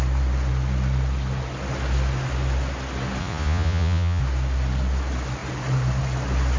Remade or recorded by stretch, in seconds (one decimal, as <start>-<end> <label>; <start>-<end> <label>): 0.0-3.2 recorded; 3.2-4.2 remade; 4.2-6.6 recorded